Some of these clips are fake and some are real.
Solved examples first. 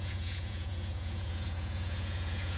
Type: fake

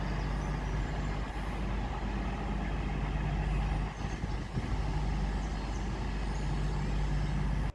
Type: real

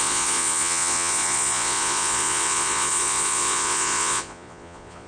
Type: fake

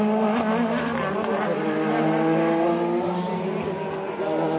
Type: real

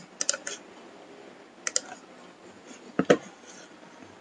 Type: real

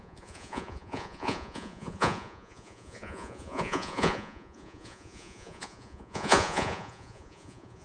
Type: fake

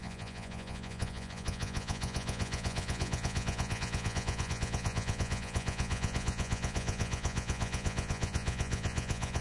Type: fake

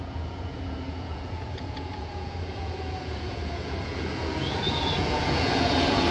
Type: fake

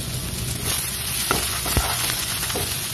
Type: fake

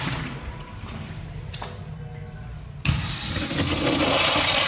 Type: real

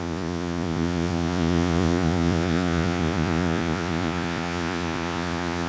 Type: fake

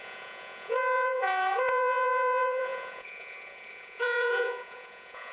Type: fake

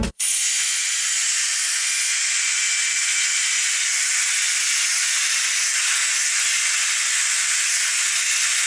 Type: fake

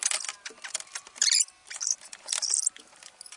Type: real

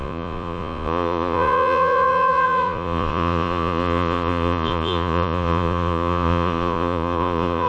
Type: fake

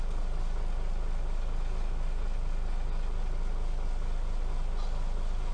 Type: real